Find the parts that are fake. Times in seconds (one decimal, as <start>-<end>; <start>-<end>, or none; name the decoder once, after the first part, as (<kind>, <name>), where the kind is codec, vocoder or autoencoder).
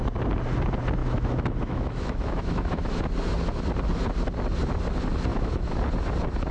1.0-3.0 (autoencoder, DAC-VAE); 5.3-5.8